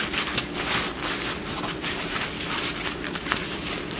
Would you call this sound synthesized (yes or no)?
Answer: no